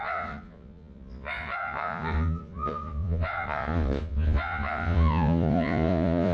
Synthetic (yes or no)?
yes